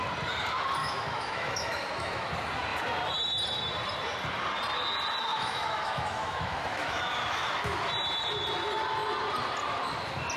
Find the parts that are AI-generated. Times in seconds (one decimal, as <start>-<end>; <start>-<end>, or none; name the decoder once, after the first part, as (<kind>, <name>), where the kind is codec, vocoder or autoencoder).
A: 0.8-2.3 (autoencoder, DAC-VAE); 5.3-7.8